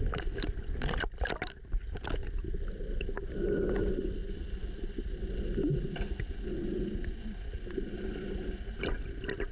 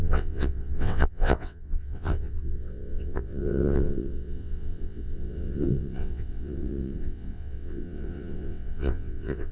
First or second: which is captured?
first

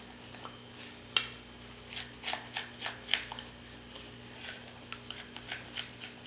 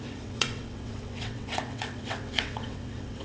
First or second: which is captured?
first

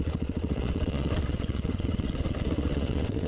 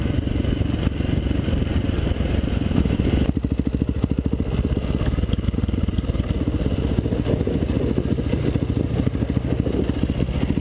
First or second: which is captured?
second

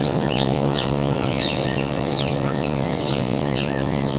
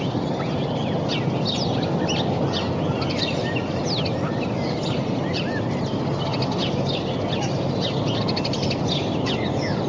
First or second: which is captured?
second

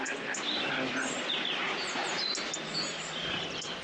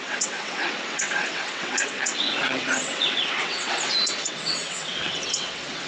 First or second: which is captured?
first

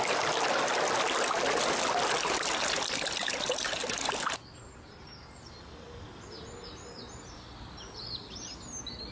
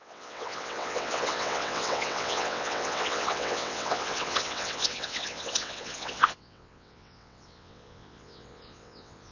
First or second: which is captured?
first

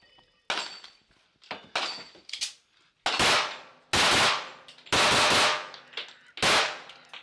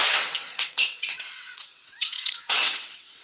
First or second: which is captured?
first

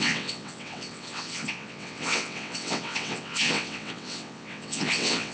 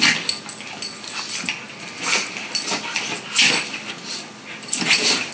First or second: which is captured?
second